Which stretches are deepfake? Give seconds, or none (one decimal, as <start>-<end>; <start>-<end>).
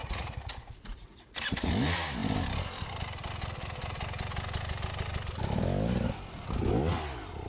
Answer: 0.0-1.7